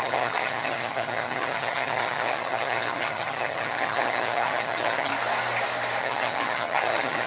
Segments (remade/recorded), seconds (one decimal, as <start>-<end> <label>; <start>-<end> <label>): 0.0-5.1 remade; 5.1-6.0 recorded; 6.0-7.3 remade